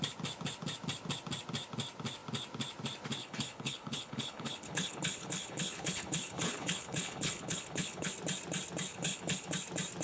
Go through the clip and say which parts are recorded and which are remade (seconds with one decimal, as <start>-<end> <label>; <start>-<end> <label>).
0.0-3.2 recorded; 3.2-8.1 remade; 8.1-8.9 recorded; 8.9-9.5 remade; 9.5-10.0 recorded